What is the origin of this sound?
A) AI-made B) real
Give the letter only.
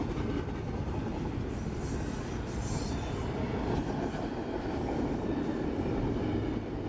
B